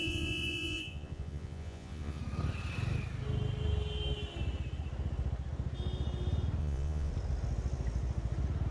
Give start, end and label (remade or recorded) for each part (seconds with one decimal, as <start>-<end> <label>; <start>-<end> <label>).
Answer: 0.0-2.2 remade; 2.2-6.6 recorded; 6.6-7.1 remade; 7.1-8.7 recorded